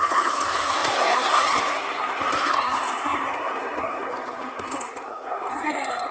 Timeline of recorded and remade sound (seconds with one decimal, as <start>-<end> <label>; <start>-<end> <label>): 0.0-6.1 remade